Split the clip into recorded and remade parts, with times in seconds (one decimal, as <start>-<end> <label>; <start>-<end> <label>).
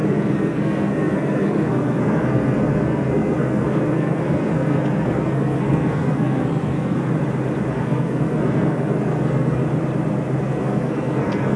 0.0-7.0 remade; 7.0-7.7 recorded; 7.7-9.6 remade; 9.6-10.4 recorded; 10.4-11.6 remade